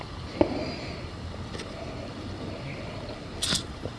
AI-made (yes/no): no